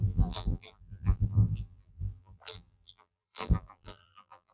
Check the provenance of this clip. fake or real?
fake